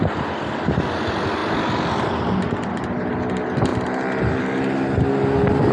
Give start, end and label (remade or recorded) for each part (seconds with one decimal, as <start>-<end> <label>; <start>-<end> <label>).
0.0-5.7 recorded